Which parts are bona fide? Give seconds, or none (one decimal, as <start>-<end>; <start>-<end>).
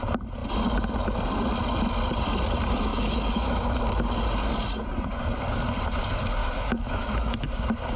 0.0-2.9; 3.8-6.4; 7.4-8.0